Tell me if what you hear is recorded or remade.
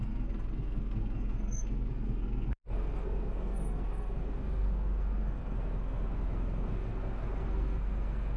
remade